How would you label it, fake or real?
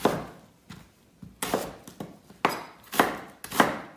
real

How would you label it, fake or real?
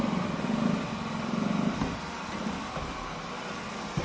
real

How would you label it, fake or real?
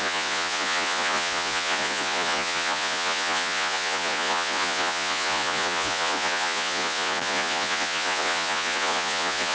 fake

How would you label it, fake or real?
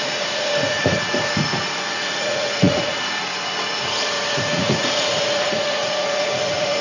fake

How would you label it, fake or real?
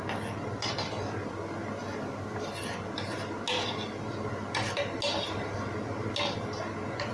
real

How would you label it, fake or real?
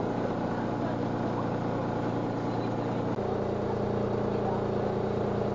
real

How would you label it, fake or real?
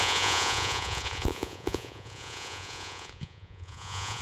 fake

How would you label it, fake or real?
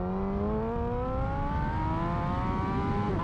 real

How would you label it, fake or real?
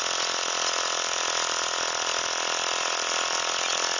real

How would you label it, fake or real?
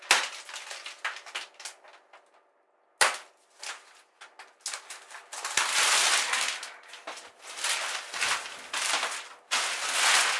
real